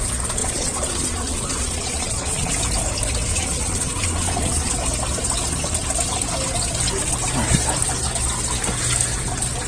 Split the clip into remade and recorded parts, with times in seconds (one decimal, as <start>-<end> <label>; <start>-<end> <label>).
0.0-0.4 recorded; 0.4-2.5 remade; 2.5-3.3 recorded; 3.3-4.7 remade; 4.7-9.7 recorded